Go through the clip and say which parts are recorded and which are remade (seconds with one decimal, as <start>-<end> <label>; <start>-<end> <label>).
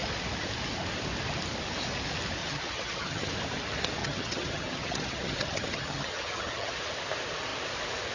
0.0-2.4 recorded; 2.4-3.3 remade; 3.3-4.0 recorded; 4.0-6.7 remade; 6.7-8.1 recorded